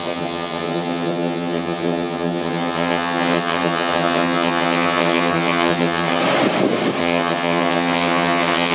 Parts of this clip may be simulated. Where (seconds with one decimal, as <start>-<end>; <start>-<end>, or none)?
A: 0.0-6.2; 7.0-8.7